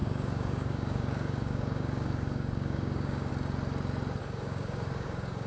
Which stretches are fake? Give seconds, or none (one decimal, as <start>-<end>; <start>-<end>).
0.0-3.3; 4.2-5.5